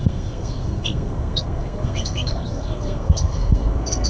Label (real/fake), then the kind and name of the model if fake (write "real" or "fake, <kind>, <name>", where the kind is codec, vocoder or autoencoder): fake, codec, SNAC